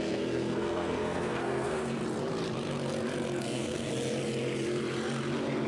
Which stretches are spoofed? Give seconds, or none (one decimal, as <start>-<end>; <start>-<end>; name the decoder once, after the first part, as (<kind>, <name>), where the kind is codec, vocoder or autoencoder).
0.0-2.0 (codec, SNAC); 3.4-3.9